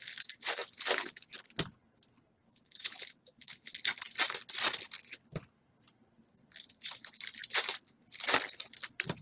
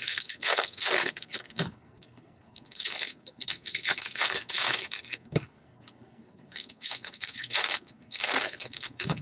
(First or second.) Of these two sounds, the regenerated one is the second